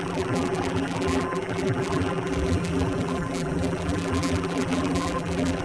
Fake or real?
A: fake